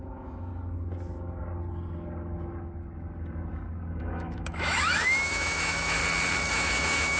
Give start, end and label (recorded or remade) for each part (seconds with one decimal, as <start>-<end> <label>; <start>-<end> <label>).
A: 0.0-0.5 remade; 0.5-4.0 recorded; 4.0-6.0 remade; 6.0-6.5 recorded; 6.5-7.2 remade